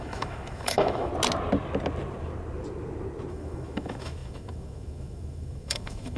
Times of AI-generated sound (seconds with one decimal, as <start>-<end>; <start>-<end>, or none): 0.0-1.1; 3.3-6.2